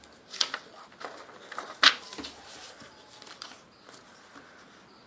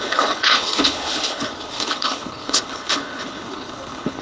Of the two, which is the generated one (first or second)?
second